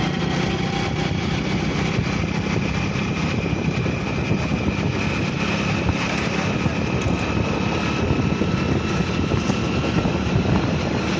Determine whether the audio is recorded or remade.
recorded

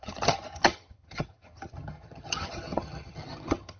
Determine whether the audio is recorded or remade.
remade